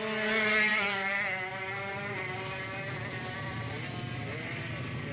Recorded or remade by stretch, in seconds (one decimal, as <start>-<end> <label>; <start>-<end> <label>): 0.0-0.7 recorded; 0.7-3.8 remade; 3.8-5.1 recorded